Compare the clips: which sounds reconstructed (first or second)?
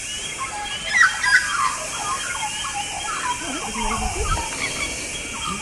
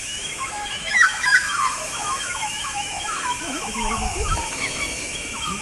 second